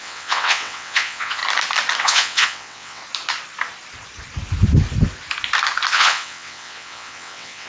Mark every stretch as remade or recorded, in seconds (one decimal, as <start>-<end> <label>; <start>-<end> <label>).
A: 0.0-1.4 remade; 1.4-2.0 recorded; 2.0-3.0 remade; 3.0-5.9 recorded; 5.9-7.7 remade